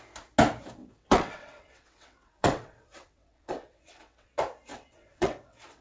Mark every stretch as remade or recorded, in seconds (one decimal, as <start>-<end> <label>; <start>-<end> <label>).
0.0-0.8 recorded; 0.8-4.3 remade; 4.3-4.7 recorded; 4.7-5.8 remade